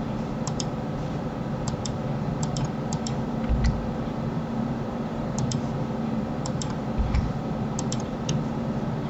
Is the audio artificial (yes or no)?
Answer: yes